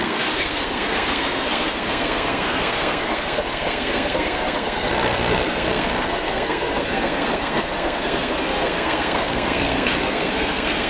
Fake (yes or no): yes